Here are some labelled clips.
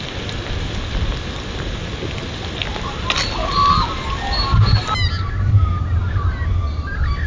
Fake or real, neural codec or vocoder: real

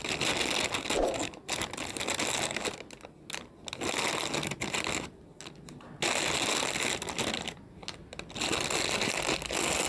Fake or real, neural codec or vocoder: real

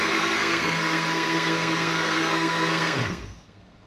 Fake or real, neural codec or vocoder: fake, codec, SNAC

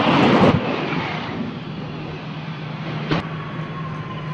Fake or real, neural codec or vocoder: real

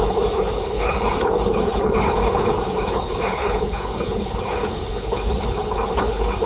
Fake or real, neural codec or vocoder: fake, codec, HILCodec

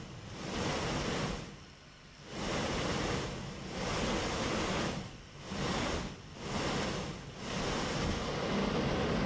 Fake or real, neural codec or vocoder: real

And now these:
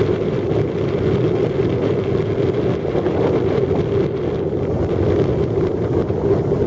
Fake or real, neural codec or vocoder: real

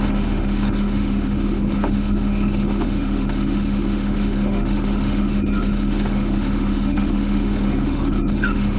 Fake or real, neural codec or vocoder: fake, autoencoder, DAC-VAE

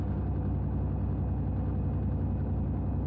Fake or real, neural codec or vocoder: real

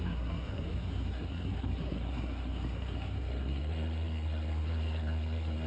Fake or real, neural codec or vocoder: fake, codec, SNAC